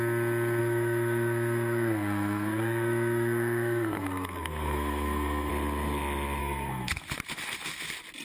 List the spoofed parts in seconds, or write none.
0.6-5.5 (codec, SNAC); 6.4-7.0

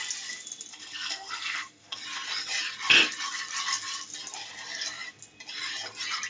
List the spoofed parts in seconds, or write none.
0.7-2.0 (codec, SNAC)

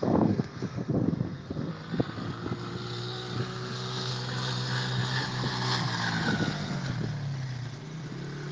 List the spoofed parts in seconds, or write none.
0.0-1.7 (codec, SNAC); 3.4-4.1

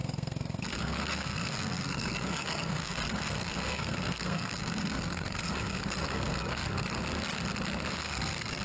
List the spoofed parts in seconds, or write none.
0.0-6.6 (codec, SNAC); 7.9-8.6

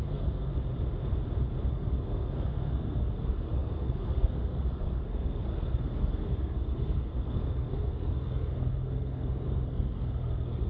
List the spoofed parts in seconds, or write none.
0.0-0.5 (codec, SNAC); 1.7-10.7

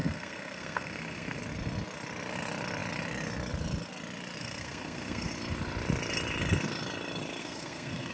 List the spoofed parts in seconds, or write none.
0.0-1.4 (codec, SNAC); 4.4-5.3; 7.4-8.1